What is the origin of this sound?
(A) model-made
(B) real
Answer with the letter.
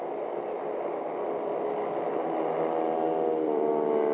B